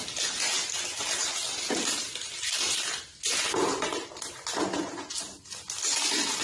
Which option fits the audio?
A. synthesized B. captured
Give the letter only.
B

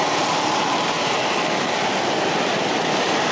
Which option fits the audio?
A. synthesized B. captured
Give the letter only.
B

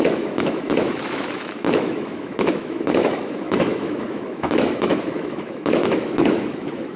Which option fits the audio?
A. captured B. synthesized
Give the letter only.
B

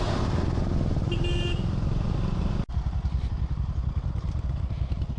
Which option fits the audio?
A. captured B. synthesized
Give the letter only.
A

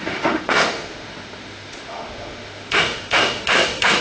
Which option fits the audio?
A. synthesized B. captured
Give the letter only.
A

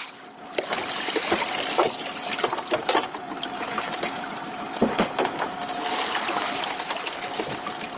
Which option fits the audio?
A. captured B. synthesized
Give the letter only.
A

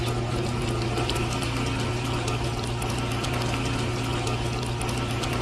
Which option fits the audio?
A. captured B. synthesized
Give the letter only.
A